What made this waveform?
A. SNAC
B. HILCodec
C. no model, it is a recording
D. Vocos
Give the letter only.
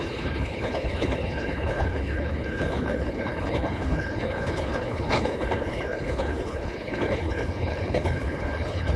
B